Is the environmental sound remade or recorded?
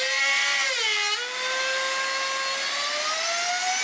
recorded